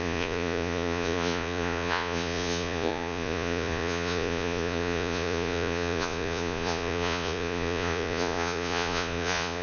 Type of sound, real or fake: fake